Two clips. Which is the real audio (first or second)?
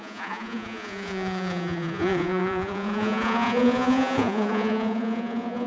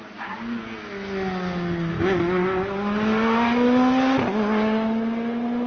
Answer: second